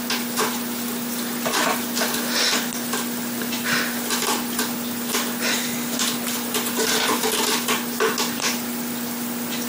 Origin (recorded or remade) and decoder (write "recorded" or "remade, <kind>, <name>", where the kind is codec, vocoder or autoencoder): recorded